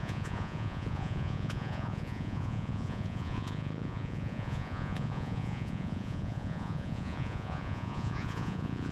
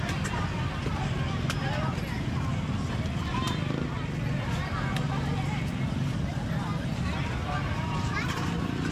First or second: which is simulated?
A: first